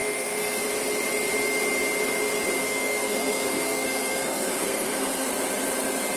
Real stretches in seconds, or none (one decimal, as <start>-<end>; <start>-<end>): 0.6-2.6; 5.3-6.2